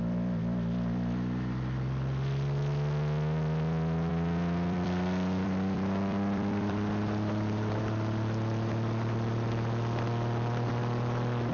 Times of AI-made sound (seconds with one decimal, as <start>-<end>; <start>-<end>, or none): 4.1-7.8